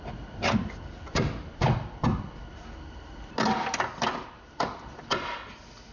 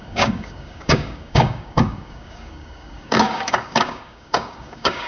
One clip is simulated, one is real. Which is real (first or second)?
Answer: first